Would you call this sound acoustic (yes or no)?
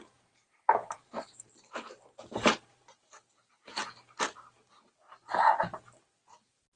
no